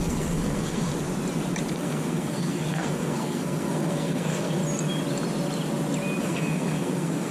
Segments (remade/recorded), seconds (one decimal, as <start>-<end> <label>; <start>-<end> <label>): 0.0-0.9 remade; 0.9-1.7 recorded; 1.7-4.6 remade; 4.6-6.2 recorded; 6.2-7.3 remade